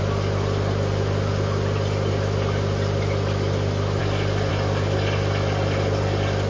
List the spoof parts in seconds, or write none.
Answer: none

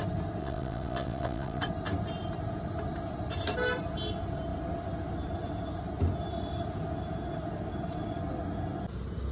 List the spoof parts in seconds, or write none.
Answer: 0.4-1.6 (vocoder, WaveNeXt)